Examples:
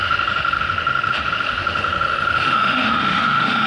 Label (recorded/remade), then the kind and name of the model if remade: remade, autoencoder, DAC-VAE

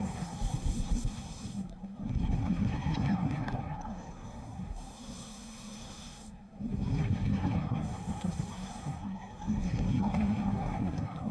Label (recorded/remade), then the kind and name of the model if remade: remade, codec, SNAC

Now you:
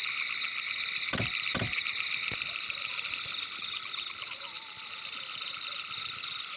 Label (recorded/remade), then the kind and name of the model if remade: recorded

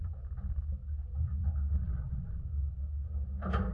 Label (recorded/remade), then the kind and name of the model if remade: recorded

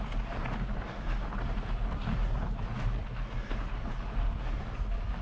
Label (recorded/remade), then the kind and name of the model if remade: recorded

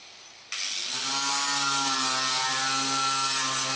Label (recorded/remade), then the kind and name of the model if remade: recorded